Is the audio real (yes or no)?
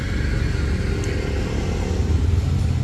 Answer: yes